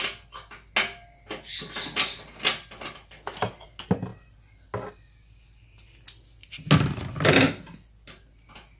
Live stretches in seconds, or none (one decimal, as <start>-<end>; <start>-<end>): 0.0-8.8